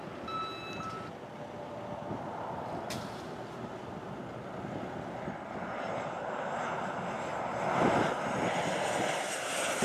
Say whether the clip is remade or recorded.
recorded